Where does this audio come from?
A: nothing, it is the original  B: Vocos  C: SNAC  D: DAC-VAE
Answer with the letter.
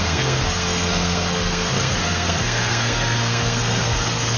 C